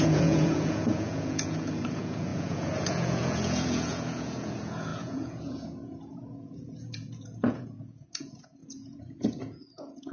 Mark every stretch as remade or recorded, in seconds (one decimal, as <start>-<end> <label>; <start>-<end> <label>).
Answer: 0.0-10.1 remade